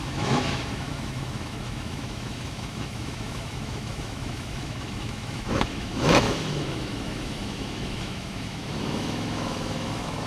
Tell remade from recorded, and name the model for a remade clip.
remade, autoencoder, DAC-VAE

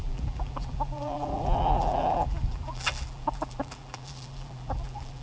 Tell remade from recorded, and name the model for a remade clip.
remade, vocoder, BigVGAN v2